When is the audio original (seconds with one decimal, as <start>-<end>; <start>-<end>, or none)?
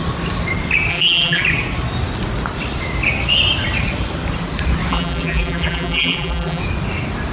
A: 0.0-0.9; 1.4-4.9; 6.6-7.3